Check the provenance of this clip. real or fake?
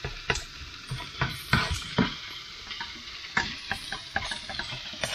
fake